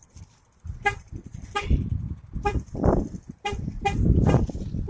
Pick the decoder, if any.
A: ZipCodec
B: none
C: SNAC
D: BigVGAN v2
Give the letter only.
D